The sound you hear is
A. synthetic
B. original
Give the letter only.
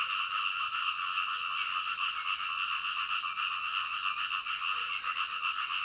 B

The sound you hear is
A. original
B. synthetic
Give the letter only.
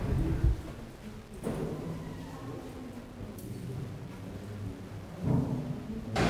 A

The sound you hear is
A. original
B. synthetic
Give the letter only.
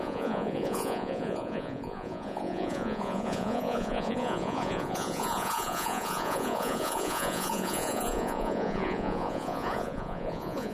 B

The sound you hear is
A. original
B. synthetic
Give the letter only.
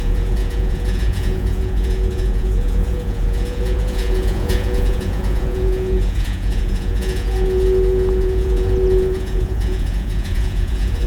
B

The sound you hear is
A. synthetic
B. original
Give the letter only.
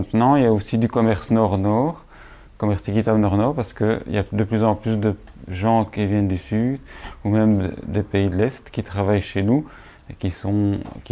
B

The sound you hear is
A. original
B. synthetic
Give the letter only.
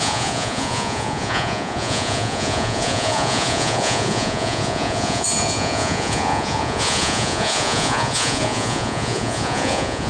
B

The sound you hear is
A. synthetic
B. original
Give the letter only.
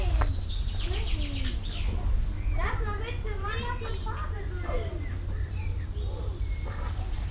B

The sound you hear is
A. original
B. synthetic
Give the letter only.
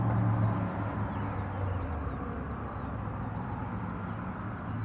A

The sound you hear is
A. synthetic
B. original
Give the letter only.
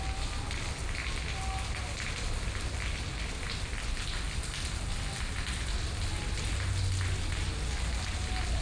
B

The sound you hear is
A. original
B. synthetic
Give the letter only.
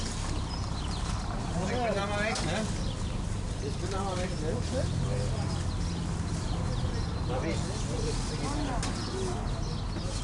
A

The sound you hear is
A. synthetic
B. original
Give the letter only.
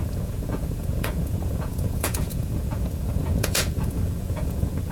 A